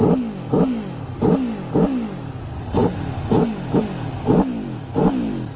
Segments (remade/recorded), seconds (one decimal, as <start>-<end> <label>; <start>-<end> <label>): 0.0-5.6 recorded